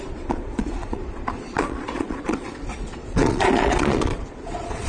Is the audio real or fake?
fake